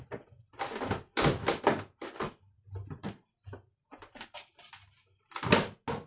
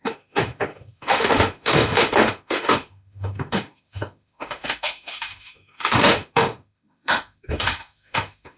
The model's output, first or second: second